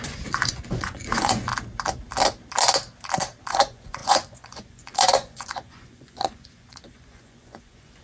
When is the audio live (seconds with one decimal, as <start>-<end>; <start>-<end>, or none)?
1.5-3.5